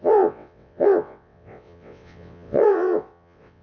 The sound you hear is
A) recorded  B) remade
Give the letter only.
B